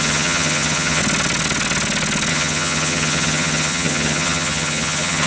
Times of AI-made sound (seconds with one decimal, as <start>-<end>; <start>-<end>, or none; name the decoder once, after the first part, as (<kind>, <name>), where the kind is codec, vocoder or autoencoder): 0.0-1.0 (vocoder, HiFi-GAN); 2.3-5.3